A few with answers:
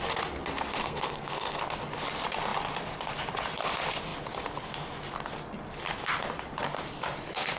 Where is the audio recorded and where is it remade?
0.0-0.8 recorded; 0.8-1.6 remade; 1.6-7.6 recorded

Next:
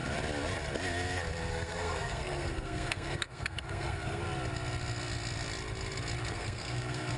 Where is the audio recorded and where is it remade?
0.0-1.5 recorded; 1.5-4.2 remade; 4.2-6.3 recorded; 6.3-7.2 remade

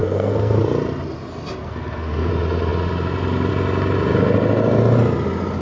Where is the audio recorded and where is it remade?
0.0-0.6 remade; 0.6-1.6 recorded; 1.6-2.3 remade; 2.3-5.6 recorded

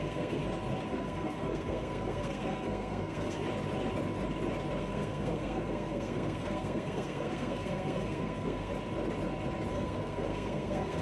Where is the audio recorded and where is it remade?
0.0-0.4 remade; 0.4-0.9 recorded; 0.9-3.4 remade; 3.4-4.8 recorded; 4.8-8.7 remade; 8.7-9.7 recorded; 9.7-11.0 remade